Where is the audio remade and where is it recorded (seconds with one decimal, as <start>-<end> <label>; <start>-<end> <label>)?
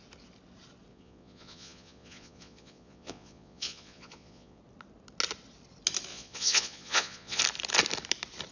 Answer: 0.0-0.9 recorded; 0.9-4.6 remade; 4.6-6.1 recorded; 6.1-7.4 remade; 7.4-8.5 recorded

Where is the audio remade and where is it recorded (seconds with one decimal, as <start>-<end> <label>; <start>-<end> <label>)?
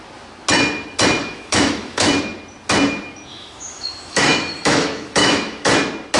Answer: 0.0-1.2 recorded; 1.2-2.1 remade; 2.1-3.3 recorded; 3.3-5.7 remade; 5.7-6.2 recorded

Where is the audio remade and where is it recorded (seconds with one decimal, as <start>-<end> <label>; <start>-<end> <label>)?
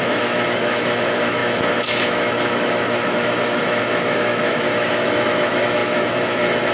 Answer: 0.0-6.7 remade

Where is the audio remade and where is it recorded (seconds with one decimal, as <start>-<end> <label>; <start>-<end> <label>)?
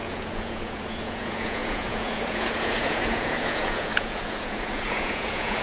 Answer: 0.0-5.6 remade